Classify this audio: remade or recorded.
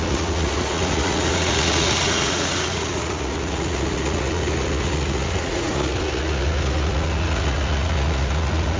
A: remade